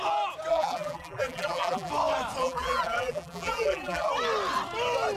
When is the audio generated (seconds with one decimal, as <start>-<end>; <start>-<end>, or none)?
0.5-1.9; 2.4-4.1